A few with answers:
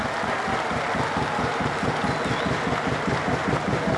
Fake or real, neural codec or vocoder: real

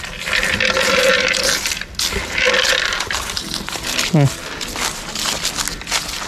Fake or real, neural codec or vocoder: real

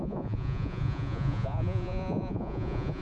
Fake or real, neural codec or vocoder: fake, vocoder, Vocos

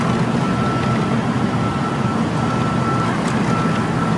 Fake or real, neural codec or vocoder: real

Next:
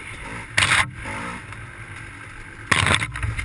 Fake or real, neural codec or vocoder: real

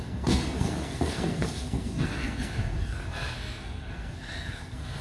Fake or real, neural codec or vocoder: fake, codec, SNAC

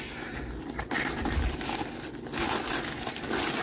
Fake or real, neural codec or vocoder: real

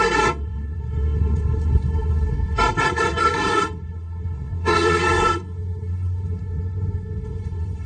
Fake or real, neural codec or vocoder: fake, codec, SNAC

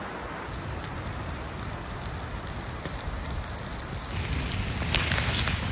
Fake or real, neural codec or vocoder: real